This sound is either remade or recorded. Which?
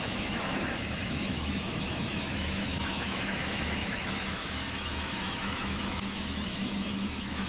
remade